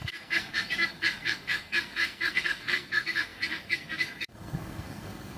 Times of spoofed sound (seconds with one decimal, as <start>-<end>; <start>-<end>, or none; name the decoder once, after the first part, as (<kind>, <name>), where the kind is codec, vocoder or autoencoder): 0.0-5.4 (codec, SNAC)